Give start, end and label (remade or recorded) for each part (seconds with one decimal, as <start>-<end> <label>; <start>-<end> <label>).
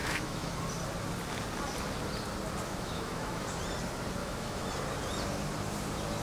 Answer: 0.0-0.5 remade; 0.5-2.7 recorded; 2.7-3.4 remade; 3.4-4.2 recorded; 4.2-4.7 remade; 4.7-6.2 recorded